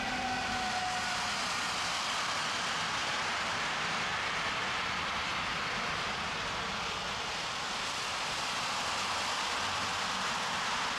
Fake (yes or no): no